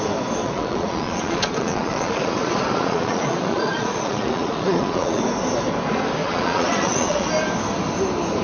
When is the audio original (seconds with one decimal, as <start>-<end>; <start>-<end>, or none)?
0.0-0.4; 5.2-6.2; 7.3-8.4